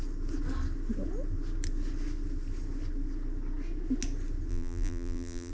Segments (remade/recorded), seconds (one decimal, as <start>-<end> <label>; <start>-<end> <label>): 0.0-4.5 recorded; 4.5-5.5 remade